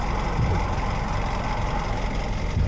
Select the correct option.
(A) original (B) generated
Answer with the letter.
A